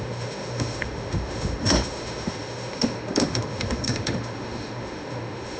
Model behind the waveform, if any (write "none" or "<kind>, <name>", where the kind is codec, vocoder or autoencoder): autoencoder, DAC-VAE